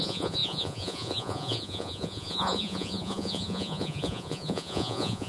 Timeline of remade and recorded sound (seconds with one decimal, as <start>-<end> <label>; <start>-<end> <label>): 0.0-5.3 remade